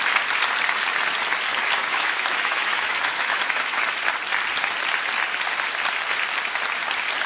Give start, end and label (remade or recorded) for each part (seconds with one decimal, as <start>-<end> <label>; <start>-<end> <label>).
0.0-1.8 recorded; 1.8-3.9 remade; 3.9-7.3 recorded